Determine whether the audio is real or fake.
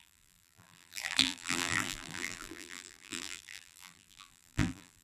fake